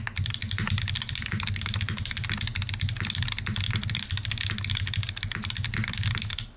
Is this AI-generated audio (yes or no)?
no